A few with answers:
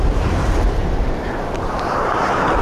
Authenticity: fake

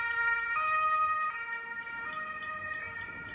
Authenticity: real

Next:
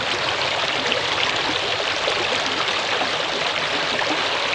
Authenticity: fake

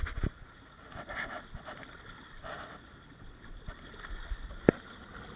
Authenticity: real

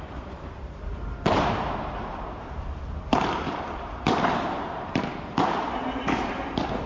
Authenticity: fake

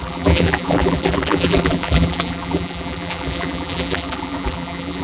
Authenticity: fake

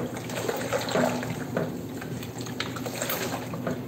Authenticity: real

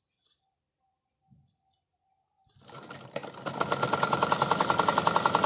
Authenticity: real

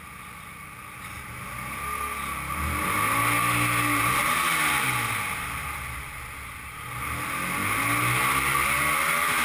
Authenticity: real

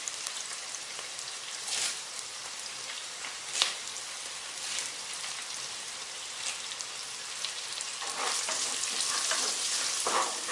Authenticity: fake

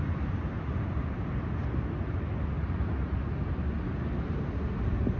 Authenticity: real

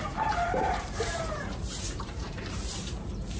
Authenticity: fake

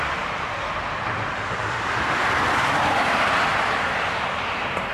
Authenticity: fake